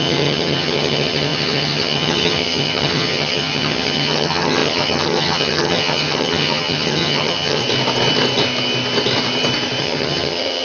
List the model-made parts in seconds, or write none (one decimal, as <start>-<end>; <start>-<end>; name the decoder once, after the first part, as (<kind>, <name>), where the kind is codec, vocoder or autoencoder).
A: 0.0-7.6 (vocoder, HiFi-GAN); 9.8-10.6